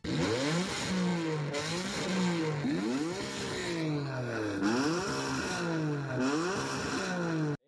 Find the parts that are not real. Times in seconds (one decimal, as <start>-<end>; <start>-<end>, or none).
none